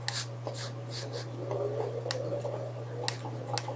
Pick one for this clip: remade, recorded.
recorded